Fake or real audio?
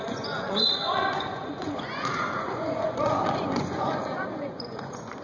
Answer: fake